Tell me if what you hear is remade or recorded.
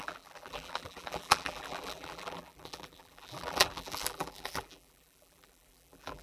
remade